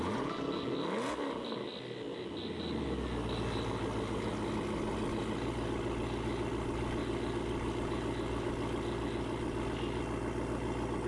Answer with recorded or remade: recorded